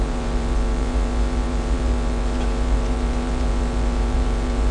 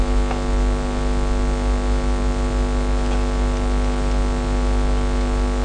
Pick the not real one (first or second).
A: first